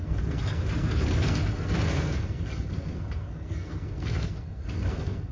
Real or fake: fake